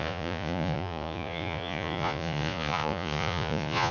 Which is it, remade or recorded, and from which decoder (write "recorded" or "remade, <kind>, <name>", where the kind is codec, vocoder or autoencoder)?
remade, vocoder, Vocos